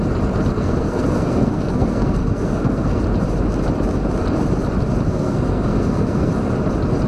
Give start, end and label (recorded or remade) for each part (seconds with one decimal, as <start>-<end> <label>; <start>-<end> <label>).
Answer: 0.0-0.5 recorded; 0.5-3.0 remade; 3.0-5.1 recorded; 5.1-6.3 remade; 6.3-7.1 recorded